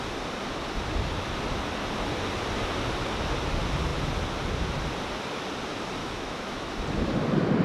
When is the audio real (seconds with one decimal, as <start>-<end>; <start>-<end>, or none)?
0.0-6.0; 6.7-7.6